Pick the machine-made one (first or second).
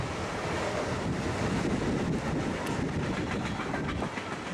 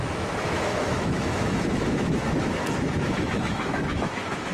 second